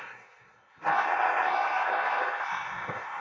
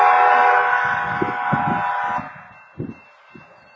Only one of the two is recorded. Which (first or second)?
second